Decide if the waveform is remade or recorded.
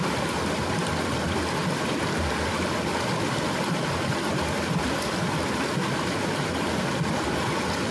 recorded